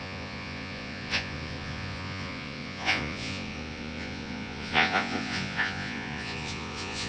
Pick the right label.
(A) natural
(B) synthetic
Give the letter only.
B